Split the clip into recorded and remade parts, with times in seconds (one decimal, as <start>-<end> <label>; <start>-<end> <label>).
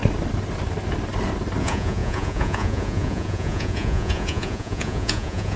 0.0-1.6 recorded; 1.6-5.6 remade